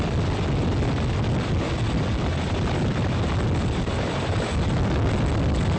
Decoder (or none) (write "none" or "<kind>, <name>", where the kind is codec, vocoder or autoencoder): none